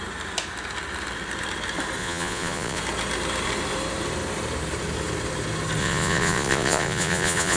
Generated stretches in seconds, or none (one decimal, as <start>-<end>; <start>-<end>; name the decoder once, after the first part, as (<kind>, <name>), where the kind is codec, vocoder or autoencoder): 2.0-2.8 (vocoder, Vocos); 5.8-7.6